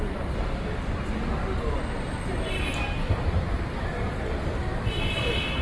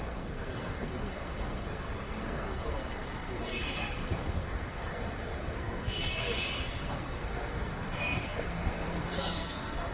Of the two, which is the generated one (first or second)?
second